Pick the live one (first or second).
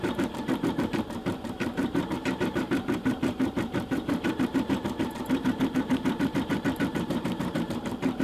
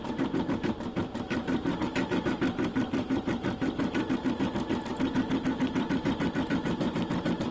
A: second